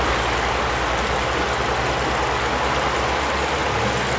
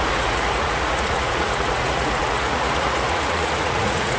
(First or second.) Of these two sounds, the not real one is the second